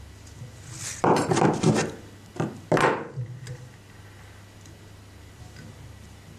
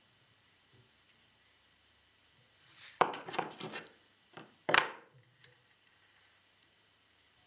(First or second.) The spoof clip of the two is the second